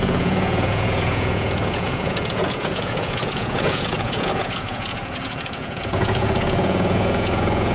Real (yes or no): no